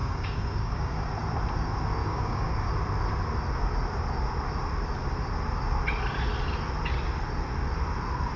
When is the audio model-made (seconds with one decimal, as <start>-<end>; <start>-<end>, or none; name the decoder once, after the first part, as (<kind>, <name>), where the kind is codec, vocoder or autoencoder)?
0.0-1.1 (codec, DAC); 2.0-2.7